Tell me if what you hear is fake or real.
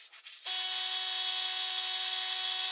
real